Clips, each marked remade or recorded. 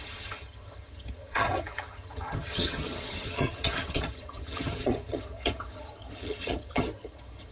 remade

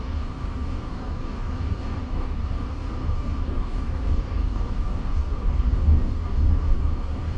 remade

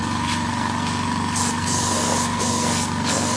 remade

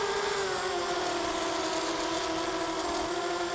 recorded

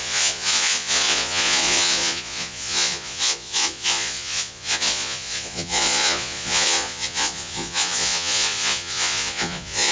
remade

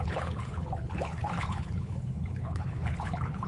remade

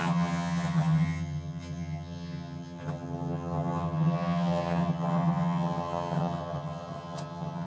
remade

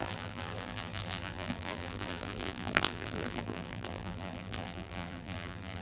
remade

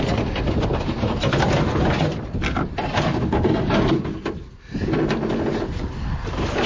recorded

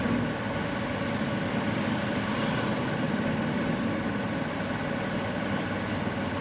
recorded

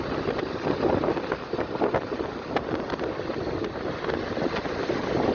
recorded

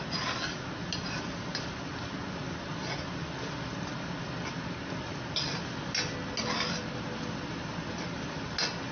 recorded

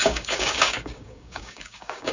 remade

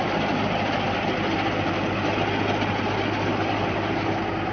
recorded